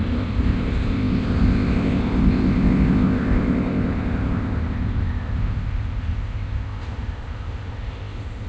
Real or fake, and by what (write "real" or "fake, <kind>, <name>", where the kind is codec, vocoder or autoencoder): fake, codec, ZipCodec